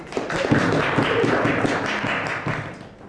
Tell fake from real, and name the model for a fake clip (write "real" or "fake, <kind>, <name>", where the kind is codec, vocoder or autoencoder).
real